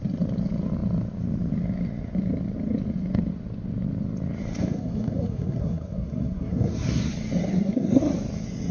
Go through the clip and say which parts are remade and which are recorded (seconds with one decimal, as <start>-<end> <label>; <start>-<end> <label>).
0.0-4.6 recorded; 4.6-7.1 remade; 7.1-7.5 recorded; 7.5-8.0 remade; 8.0-8.7 recorded